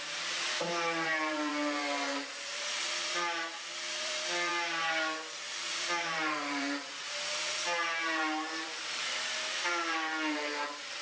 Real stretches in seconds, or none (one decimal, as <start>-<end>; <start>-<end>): none